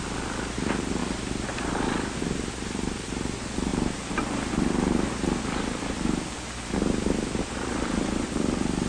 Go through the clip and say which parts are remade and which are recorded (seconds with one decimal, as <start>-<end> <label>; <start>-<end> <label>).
0.0-1.0 remade; 1.0-2.5 recorded; 2.5-3.7 remade; 3.7-7.4 recorded; 7.4-8.9 remade